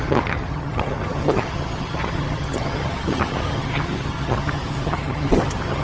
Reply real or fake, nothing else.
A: fake